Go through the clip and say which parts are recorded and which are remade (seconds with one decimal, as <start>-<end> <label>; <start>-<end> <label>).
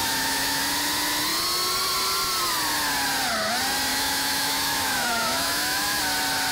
0.0-0.6 remade; 0.6-3.9 recorded; 3.9-6.0 remade; 6.0-6.5 recorded